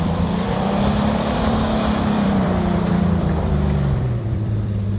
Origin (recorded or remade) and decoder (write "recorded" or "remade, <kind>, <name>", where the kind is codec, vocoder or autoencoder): remade, vocoder, BigVGAN v2